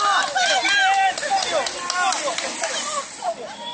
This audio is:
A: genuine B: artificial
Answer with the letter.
A